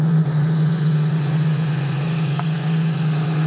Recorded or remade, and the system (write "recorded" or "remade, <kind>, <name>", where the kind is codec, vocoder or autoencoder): remade, vocoder, Vocos